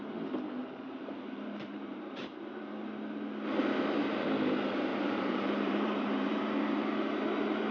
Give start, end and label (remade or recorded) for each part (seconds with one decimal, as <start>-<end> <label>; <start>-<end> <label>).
0.0-0.6 recorded; 0.6-2.7 remade; 2.7-4.9 recorded; 4.9-6.4 remade; 6.4-7.7 recorded